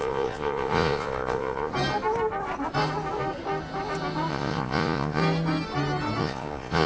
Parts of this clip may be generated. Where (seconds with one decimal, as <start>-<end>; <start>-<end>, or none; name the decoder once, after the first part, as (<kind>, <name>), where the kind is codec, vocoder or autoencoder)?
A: 0.0-1.7 (vocoder, Vocos); 4.3-5.2; 6.2-6.9